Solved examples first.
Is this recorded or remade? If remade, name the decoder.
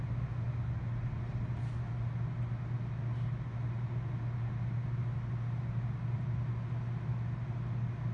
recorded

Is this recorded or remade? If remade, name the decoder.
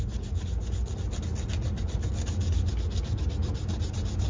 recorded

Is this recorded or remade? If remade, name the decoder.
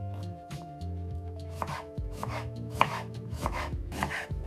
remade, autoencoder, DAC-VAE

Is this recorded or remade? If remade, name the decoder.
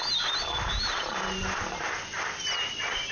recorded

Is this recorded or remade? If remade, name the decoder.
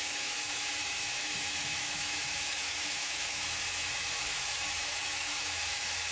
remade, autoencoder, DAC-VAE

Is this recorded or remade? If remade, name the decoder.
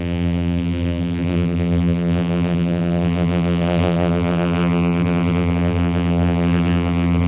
remade, vocoder, BigVGAN v2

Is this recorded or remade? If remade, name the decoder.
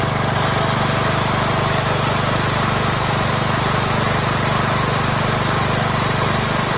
recorded